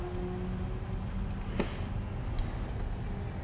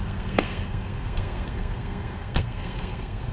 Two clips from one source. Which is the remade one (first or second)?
second